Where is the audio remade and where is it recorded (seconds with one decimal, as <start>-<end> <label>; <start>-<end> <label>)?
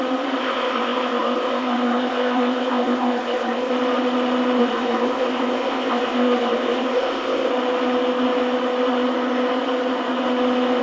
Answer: 0.0-0.4 recorded; 0.4-3.7 remade; 3.7-4.6 recorded; 4.6-7.5 remade; 7.5-10.8 recorded